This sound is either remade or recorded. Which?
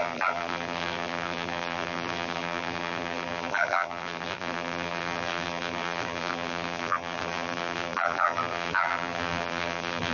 remade